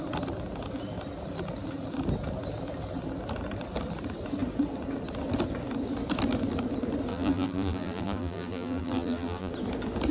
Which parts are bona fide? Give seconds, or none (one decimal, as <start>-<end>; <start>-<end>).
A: 0.0-7.1; 9.5-10.1